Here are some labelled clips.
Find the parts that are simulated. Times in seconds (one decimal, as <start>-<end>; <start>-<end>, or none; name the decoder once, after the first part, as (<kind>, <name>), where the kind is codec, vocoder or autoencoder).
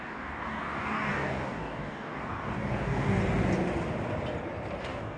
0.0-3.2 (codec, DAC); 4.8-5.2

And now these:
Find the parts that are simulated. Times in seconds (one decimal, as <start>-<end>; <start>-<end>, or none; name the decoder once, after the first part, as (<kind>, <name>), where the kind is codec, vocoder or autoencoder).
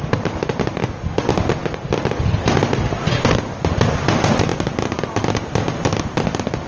none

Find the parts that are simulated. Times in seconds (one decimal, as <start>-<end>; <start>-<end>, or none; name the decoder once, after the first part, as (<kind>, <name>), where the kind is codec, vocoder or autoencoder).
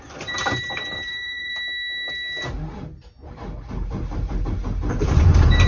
0.0-1.5 (vocoder, BigVGAN v2); 3.7-5.7